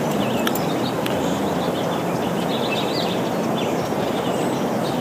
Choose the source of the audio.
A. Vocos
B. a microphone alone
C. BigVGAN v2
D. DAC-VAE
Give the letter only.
B